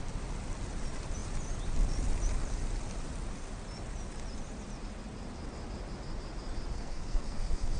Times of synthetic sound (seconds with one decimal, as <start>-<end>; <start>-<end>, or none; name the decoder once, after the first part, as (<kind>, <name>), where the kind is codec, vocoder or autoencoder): 6.7-7.8 (codec, SNAC)